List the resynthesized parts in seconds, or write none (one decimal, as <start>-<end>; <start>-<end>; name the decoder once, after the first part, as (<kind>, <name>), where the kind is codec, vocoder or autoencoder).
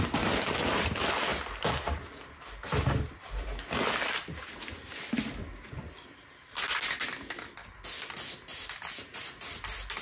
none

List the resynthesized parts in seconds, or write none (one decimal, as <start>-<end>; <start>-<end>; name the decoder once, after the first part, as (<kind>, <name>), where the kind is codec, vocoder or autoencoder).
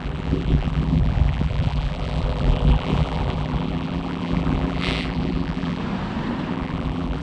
0.0-5.8 (vocoder, BigVGAN v2); 6.5-7.2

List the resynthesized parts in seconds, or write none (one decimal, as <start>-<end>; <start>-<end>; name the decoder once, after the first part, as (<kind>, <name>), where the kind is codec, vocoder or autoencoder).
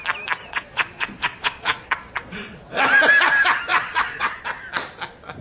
0.4-2.8 (vocoder, Vocos); 3.7-4.4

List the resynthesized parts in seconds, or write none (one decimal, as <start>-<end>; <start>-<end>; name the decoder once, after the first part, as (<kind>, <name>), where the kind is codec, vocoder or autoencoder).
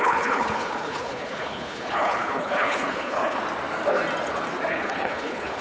0.0-3.4 (codec, HILCodec); 4.7-5.6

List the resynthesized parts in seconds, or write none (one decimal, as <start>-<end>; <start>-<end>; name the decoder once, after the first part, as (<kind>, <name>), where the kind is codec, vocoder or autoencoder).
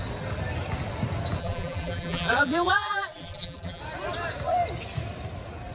1.4-3.8 (vocoder, BigVGAN v2)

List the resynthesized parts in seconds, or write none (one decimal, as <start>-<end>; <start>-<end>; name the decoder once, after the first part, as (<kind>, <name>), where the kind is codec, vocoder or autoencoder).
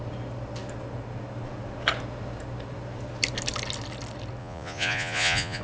4.4-5.6 (vocoder, Vocos)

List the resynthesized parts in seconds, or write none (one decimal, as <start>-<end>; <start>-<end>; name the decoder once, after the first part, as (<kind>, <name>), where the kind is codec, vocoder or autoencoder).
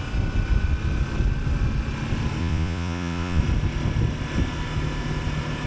2.4-3.4 (vocoder, Vocos)